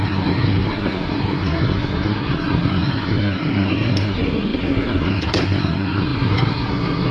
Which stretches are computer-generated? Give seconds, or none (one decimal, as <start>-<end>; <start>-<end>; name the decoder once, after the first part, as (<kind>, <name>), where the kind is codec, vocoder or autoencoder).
0.0-7.1 (codec, SNAC)